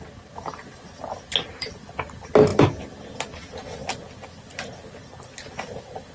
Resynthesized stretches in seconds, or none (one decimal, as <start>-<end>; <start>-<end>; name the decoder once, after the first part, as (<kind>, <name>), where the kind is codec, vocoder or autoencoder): none